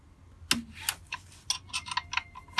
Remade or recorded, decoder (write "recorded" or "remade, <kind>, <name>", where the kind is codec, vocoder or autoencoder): recorded